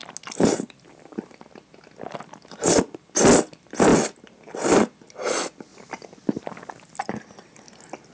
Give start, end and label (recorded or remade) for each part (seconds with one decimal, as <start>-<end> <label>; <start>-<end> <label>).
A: 0.0-8.1 recorded